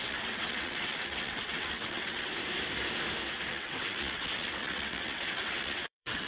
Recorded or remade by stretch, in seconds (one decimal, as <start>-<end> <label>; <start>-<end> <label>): 0.0-2.3 remade; 2.3-3.5 recorded; 3.5-6.3 remade

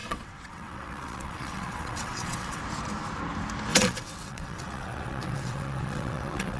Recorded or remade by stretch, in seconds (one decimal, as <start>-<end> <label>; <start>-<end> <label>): 0.0-2.6 remade; 2.6-3.7 recorded; 3.7-6.6 remade

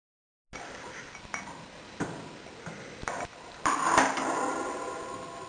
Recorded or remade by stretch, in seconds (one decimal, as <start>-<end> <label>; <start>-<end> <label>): 0.0-5.5 recorded

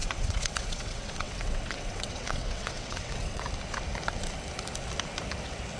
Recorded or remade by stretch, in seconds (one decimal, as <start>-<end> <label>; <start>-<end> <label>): 0.0-3.5 remade; 3.5-5.8 recorded

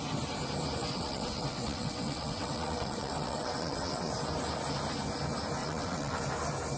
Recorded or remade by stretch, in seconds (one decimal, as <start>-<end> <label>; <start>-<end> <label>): 0.0-0.8 recorded; 0.8-4.1 remade; 4.1-5.6 recorded; 5.6-6.2 remade; 6.2-6.8 recorded

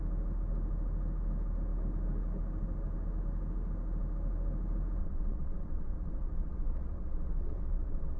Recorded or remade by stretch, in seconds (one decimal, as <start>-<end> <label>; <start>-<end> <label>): 0.0-5.0 recorded; 5.0-8.2 remade

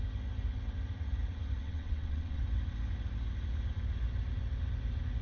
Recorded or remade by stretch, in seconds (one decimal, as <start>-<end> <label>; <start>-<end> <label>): 0.0-1.6 recorded; 1.6-2.4 remade; 2.4-5.2 recorded